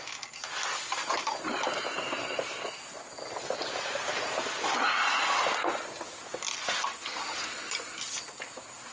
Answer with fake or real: real